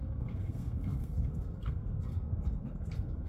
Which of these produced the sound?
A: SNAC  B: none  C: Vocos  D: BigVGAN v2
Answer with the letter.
A